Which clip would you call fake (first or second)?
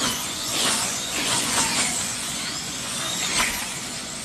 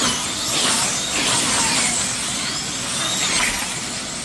first